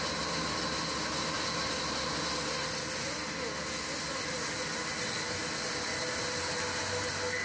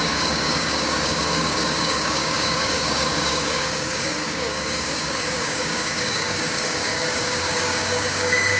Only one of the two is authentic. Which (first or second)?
first